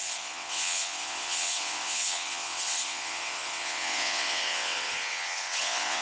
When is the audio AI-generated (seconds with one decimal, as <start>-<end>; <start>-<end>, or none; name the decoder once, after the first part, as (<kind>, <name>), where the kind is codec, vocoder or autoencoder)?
0.0-6.0 (vocoder, WaveNeXt)